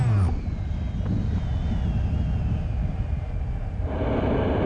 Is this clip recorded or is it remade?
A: recorded